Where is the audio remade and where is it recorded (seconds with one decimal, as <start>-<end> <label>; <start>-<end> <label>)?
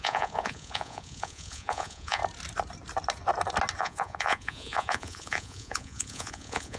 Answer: 0.0-2.2 remade; 2.2-3.8 recorded; 3.8-6.8 remade